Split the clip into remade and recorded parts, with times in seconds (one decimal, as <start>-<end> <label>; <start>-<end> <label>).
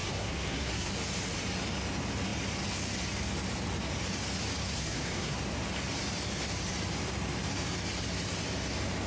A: 0.0-0.9 remade; 0.9-4.6 recorded; 4.6-5.4 remade; 5.4-9.1 recorded